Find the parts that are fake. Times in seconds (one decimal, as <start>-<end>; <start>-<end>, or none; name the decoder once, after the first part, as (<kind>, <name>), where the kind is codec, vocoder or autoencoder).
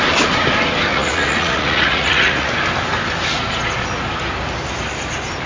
0.9-2.5 (vocoder, Vocos)